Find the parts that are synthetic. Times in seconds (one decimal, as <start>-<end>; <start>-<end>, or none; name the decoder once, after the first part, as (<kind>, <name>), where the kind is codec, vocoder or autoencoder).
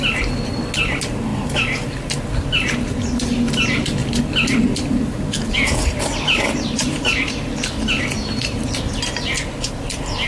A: none